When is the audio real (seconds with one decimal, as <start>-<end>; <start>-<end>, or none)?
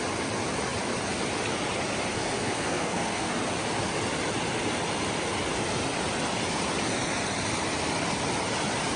0.0-2.1; 3.3-9.0